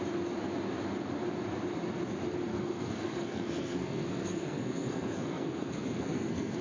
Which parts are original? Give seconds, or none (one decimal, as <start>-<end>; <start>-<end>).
0.0-2.5